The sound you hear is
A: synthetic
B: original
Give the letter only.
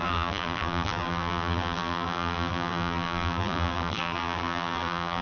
A